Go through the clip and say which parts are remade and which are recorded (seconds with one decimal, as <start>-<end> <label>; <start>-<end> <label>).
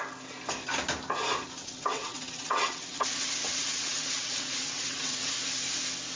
0.0-1.6 recorded; 1.6-5.3 remade; 5.3-6.2 recorded